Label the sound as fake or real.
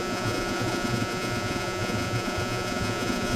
fake